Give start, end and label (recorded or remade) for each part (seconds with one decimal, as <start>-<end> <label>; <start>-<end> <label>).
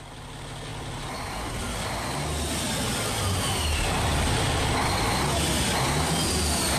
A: 0.0-6.8 recorded